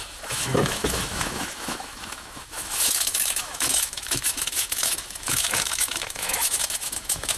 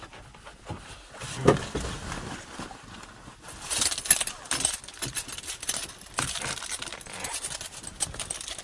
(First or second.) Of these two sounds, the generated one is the first